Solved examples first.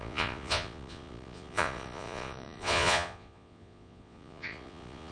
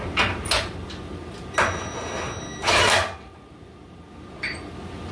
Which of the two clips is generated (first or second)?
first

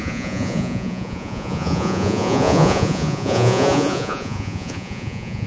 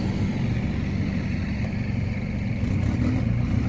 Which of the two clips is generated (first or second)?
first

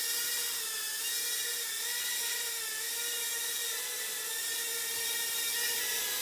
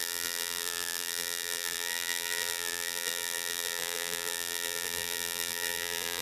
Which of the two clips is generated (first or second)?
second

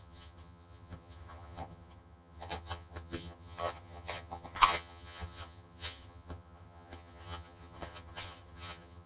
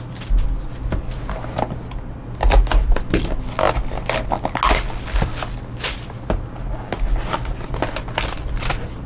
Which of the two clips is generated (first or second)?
first